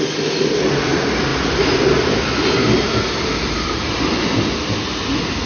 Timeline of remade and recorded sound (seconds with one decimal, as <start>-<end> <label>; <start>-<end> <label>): 0.0-5.5 recorded